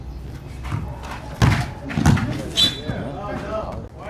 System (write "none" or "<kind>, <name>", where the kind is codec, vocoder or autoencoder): none